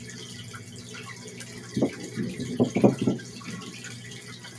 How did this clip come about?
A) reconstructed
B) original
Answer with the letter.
B